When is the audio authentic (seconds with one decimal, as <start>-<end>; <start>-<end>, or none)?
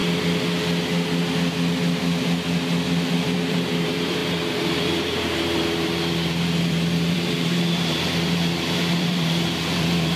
0.0-3.1